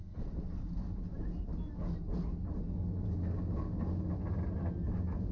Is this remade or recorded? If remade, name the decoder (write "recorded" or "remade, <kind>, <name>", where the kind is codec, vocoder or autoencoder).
recorded